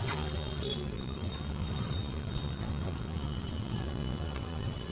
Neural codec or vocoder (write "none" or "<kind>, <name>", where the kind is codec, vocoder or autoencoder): vocoder, WaveNeXt